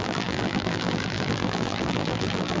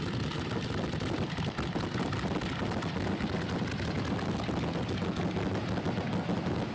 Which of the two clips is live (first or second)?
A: second